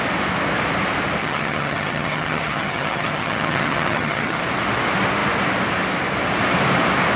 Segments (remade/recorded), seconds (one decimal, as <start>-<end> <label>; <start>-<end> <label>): 0.0-1.2 recorded; 1.2-4.4 remade; 4.4-7.2 recorded